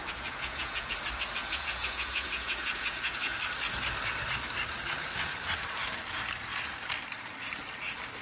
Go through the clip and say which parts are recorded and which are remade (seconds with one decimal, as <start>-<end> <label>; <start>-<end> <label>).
0.0-0.9 remade; 0.9-1.4 recorded; 1.4-3.4 remade; 3.4-8.2 recorded